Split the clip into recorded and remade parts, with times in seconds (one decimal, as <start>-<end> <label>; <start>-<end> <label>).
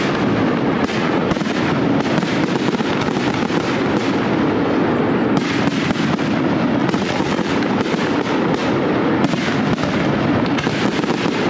0.0-0.7 recorded; 0.7-1.6 remade; 1.6-6.8 recorded; 6.8-7.5 remade; 7.5-11.5 recorded